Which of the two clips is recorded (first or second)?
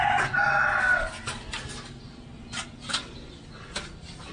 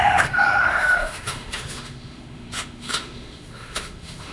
first